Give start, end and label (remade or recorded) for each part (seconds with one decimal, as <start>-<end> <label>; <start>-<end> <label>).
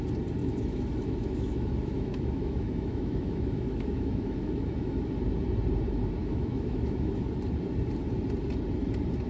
0.0-0.4 recorded; 0.4-5.1 remade; 5.1-6.2 recorded; 6.2-7.3 remade; 7.3-9.3 recorded